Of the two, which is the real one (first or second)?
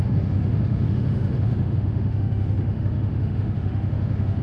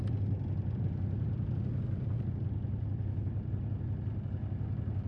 second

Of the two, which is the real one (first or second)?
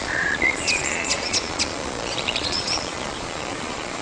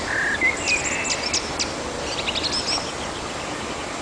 second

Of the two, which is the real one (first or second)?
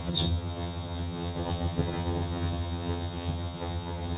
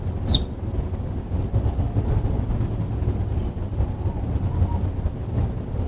second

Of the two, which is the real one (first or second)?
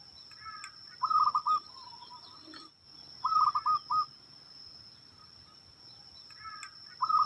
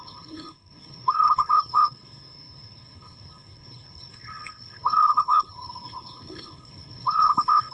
first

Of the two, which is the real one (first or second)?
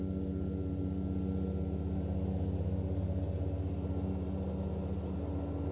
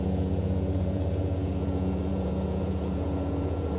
first